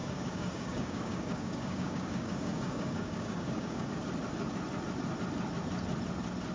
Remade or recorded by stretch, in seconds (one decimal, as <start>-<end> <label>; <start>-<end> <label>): 0.0-3.9 remade; 3.9-6.5 recorded